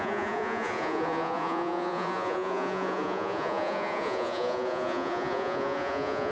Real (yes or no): no